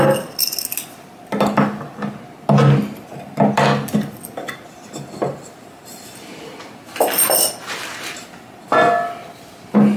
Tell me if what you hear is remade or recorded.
recorded